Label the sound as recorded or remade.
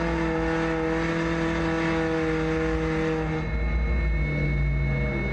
recorded